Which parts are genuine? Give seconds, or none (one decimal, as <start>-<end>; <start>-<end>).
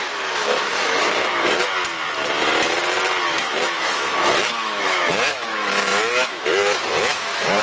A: 1.6-3.2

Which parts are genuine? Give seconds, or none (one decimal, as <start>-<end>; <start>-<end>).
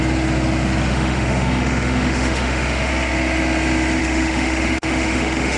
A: 0.0-0.9; 2.9-4.0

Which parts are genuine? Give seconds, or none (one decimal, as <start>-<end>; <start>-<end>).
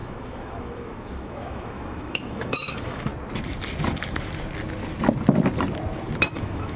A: 3.1-6.2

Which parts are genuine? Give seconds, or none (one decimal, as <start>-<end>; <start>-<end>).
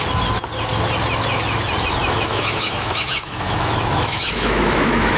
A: 0.0-2.0